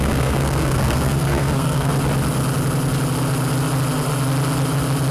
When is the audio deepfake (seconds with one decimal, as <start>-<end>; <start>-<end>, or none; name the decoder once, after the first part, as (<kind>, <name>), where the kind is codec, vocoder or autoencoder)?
0.0-1.9 (codec, SNAC)